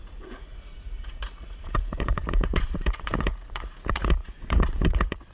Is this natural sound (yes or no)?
no